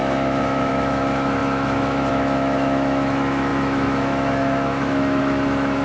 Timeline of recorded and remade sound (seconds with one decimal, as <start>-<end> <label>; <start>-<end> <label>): 0.0-5.8 remade